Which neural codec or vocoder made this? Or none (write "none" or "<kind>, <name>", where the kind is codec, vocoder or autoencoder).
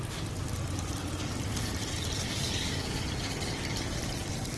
none